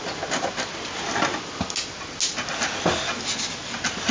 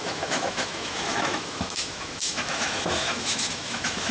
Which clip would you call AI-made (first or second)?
second